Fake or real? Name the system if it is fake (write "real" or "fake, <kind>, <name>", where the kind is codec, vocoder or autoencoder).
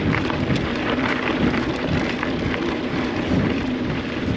fake, vocoder, BigVGAN v2